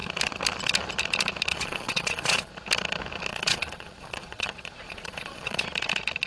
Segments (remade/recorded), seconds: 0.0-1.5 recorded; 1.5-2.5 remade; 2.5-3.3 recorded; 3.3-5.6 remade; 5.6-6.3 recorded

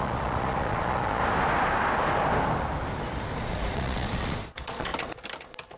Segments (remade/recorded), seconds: 0.0-1.2 remade; 1.2-3.4 recorded; 3.4-4.9 remade; 4.9-5.8 recorded

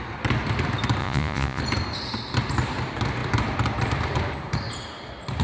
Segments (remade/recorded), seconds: 0.0-1.0 recorded; 1.0-1.6 remade; 1.6-5.4 recorded